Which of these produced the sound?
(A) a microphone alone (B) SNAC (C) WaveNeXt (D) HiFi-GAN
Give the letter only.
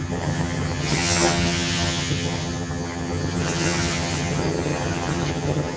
D